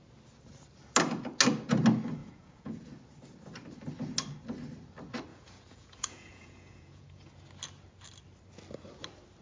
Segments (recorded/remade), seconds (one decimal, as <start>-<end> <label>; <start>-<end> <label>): 0.0-2.2 recorded; 2.2-2.9 remade; 2.9-5.3 recorded; 5.3-7.3 remade; 7.3-9.4 recorded